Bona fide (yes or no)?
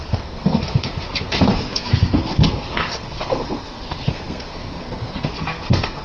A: no